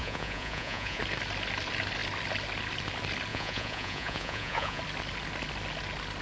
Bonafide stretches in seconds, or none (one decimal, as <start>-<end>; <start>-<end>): 1.0-3.3; 4.8-6.2